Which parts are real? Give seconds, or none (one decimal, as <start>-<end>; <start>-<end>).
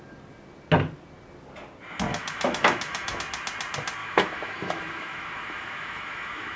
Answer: 0.0-2.1; 3.2-4.0